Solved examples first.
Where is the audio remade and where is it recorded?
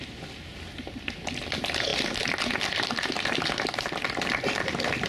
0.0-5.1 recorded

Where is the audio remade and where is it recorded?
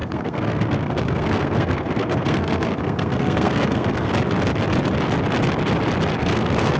0.0-4.1 remade; 4.1-6.2 recorded; 6.2-6.8 remade